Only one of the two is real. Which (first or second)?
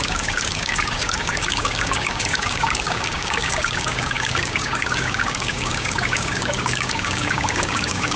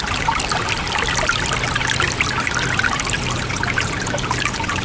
second